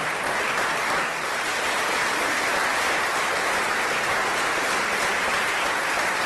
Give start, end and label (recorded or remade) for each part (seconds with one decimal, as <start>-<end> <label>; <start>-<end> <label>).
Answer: 0.0-6.3 recorded